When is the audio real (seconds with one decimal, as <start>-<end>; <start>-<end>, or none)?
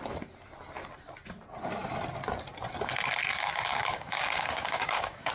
0.0-3.3